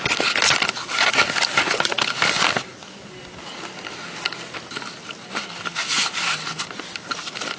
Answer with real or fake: real